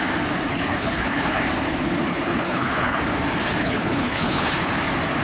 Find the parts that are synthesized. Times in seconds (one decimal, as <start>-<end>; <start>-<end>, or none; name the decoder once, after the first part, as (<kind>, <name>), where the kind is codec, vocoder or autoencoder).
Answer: 0.5-1.4 (codec, HILCodec); 2.1-3.0; 3.6-4.7

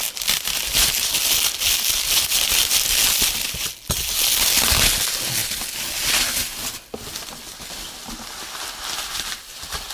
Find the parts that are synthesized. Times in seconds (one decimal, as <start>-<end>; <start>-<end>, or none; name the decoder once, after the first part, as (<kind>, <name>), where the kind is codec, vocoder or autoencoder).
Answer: none

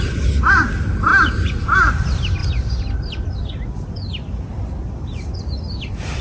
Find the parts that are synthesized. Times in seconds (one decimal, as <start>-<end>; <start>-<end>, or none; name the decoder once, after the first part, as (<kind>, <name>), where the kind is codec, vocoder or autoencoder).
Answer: none